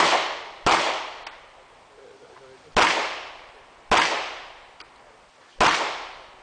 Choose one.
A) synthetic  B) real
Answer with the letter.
B